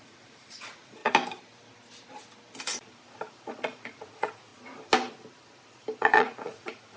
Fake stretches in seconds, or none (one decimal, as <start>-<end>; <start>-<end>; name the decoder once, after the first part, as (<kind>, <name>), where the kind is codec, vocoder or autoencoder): 0.0-1.0 (vocoder, Vocos); 3.5-4.5; 6.0-7.0